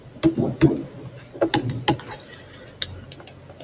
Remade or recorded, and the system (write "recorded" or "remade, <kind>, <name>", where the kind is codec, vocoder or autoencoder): recorded